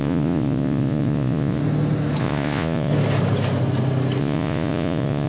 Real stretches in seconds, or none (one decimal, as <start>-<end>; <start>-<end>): 1.6-2.2; 2.9-4.2